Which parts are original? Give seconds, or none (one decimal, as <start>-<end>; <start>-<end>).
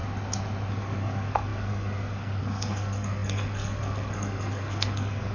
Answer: 0.0-0.7